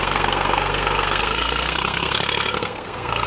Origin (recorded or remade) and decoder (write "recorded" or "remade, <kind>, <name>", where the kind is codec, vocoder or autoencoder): remade, codec, SNAC